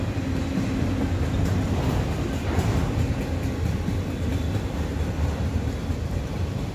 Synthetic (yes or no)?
no